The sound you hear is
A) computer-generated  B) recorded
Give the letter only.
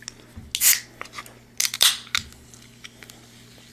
B